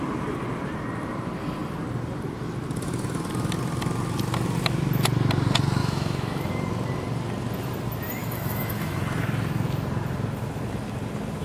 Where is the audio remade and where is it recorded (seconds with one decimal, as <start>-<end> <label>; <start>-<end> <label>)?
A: 0.0-5.8 recorded; 5.8-6.5 remade; 6.5-8.2 recorded; 8.2-9.0 remade; 9.0-11.4 recorded